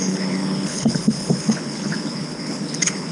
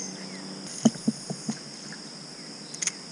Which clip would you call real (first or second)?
second